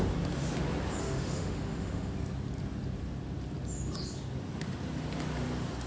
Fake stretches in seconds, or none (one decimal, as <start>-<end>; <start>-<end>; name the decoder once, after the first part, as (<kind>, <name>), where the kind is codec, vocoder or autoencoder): 1.0-2.1 (autoencoder, DAC-VAE)